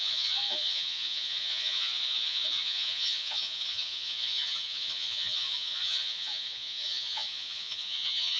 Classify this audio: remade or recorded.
remade